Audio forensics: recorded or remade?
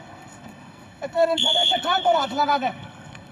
remade